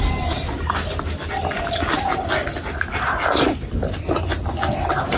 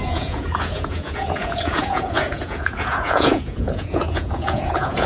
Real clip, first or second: first